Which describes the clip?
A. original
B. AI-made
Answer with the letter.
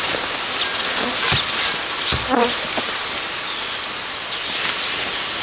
A